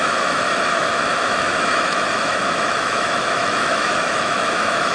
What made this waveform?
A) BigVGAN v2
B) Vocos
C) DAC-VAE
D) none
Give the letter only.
C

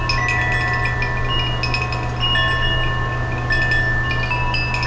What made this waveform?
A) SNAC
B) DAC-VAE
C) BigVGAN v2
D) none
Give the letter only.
D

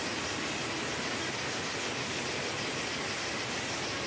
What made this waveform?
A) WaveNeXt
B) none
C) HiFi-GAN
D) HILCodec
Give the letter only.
B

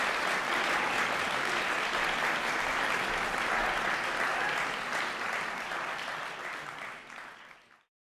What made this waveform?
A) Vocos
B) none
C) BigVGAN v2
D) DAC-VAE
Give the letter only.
B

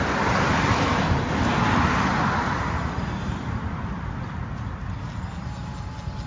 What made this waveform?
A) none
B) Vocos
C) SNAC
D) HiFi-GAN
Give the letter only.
A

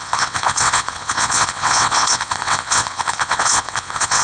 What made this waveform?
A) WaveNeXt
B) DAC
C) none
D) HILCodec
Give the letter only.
A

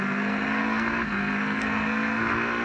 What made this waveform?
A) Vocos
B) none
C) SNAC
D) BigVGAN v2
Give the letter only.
C